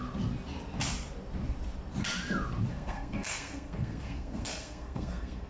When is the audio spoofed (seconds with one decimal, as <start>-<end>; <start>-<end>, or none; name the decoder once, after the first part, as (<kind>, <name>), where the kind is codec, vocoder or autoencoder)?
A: 2.7-5.5 (codec, SNAC)